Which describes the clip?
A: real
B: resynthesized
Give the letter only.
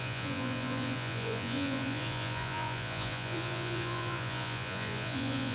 B